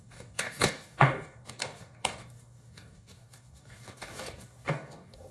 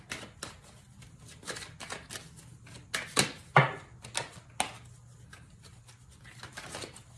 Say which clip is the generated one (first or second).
first